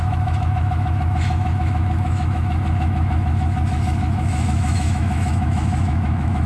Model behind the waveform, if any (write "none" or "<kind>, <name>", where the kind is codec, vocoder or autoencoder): autoencoder, DAC-VAE